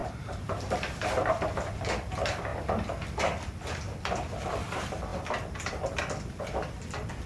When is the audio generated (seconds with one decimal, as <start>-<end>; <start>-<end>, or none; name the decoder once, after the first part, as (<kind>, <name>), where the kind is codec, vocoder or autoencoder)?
0.0-1.3 (vocoder, BigVGAN v2)

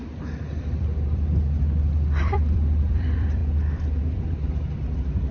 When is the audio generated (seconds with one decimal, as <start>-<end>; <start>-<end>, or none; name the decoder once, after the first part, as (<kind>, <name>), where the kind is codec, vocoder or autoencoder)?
0.0-1.3 (vocoder, BigVGAN v2); 2.2-5.3

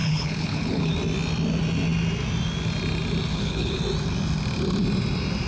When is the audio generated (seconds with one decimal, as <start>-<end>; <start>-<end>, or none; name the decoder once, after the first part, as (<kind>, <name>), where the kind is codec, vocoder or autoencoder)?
0.0-0.9 (codec, HILCodec); 3.3-3.8

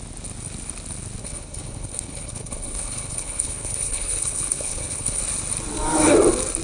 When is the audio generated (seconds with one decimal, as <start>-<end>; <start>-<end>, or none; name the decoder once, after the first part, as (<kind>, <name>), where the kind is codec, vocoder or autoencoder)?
1.2-5.2 (codec, HILCodec)

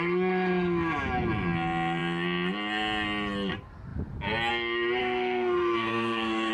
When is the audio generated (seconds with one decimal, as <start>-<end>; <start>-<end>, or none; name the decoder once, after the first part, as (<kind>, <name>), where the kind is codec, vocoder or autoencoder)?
5.0-6.5 (codec, SNAC)